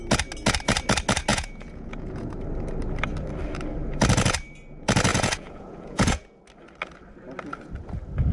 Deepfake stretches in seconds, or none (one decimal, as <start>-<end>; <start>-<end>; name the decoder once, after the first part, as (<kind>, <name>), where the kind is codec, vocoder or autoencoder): 1.3-2.3 (vocoder, Vocos); 5.1-6.4